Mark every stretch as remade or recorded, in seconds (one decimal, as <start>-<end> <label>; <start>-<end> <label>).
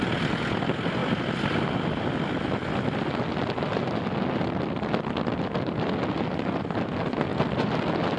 0.0-7.3 recorded; 7.3-8.2 remade